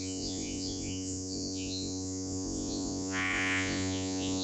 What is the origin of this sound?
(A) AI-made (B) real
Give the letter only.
A